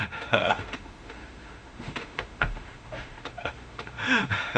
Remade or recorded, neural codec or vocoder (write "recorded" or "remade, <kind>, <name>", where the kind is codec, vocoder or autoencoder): remade, autoencoder, DAC-VAE